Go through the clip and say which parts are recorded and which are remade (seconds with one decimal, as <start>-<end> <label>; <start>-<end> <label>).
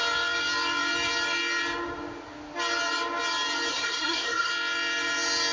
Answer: 0.0-3.7 recorded; 3.7-4.5 remade; 4.5-5.5 recorded